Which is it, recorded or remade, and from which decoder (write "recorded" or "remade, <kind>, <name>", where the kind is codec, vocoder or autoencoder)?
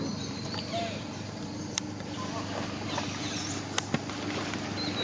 recorded